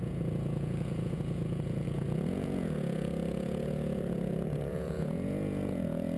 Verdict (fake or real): fake